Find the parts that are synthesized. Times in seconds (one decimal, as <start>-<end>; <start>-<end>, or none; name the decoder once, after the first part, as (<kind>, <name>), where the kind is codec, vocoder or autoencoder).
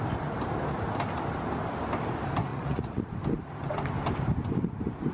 2.5-3.1 (vocoder, Vocos)